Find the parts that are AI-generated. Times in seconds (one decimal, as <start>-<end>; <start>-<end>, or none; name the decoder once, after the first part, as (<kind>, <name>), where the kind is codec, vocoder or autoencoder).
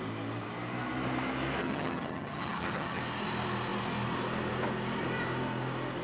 1.6-3.0 (vocoder, HiFi-GAN)